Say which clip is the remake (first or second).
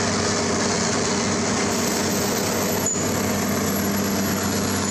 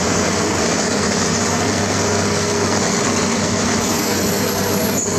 second